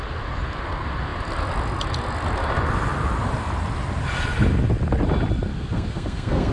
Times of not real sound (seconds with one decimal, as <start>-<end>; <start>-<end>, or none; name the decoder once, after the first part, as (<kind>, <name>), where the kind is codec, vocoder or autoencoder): 5.5-6.5 (codec, SNAC)